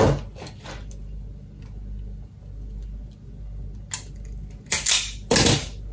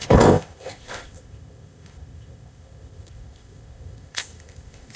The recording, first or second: first